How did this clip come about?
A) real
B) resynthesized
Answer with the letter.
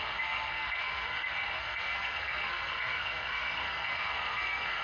B